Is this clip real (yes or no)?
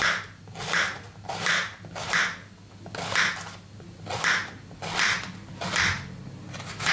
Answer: yes